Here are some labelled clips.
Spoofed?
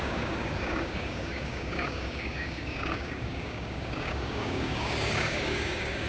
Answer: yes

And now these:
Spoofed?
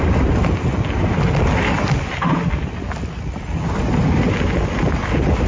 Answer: no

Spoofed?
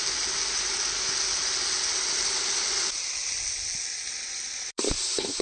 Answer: no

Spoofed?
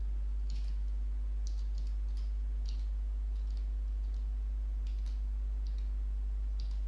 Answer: no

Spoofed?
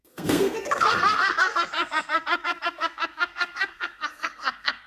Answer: yes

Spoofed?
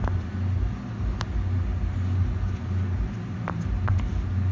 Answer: no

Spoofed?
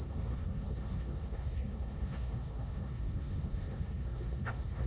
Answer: yes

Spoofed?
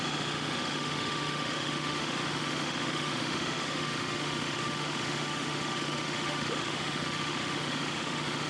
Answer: yes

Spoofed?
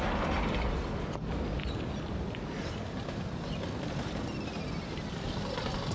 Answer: no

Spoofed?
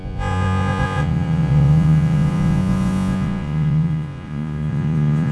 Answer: yes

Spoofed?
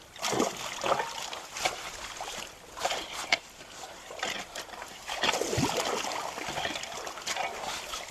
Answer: no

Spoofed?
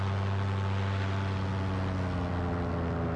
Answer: no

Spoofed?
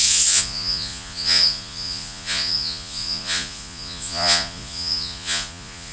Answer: yes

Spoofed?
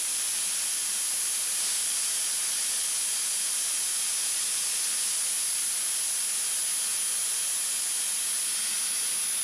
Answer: no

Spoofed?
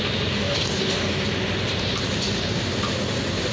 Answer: no